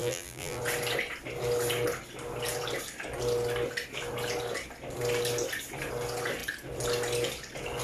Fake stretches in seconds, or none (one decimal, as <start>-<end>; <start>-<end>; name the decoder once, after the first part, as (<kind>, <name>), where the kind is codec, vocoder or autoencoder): 0.0-0.6 (vocoder, BigVGAN v2)